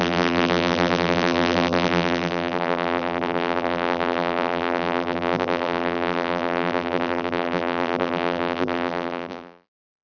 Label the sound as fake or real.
fake